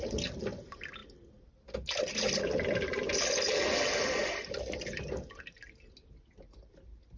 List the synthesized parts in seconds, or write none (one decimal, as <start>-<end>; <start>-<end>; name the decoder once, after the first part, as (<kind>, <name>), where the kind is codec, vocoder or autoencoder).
none